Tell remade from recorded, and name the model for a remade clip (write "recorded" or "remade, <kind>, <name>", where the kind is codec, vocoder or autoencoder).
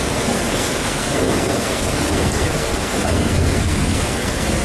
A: remade, codec, SNAC